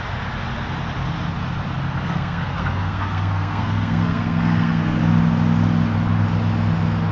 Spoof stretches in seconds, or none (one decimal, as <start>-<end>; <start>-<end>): 2.0-5.0